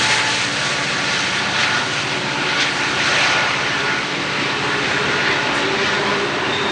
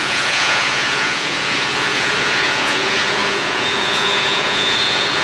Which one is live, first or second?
first